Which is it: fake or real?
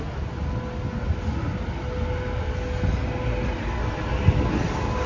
real